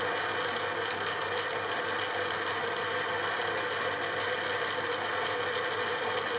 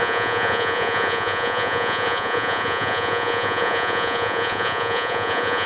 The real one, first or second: first